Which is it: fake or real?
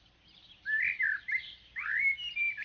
fake